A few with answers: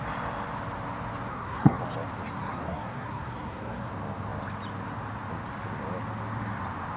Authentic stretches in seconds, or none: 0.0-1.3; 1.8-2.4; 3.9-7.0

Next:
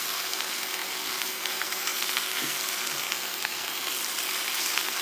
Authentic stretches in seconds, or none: 4.0-4.6

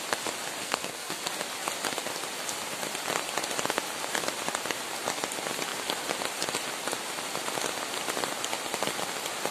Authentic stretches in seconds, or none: 0.0-0.6; 1.2-9.5

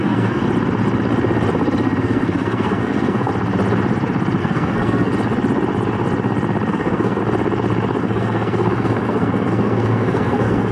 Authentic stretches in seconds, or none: 0.4-2.0; 3.3-4.4; 5.1-6.7; 7.2-8.0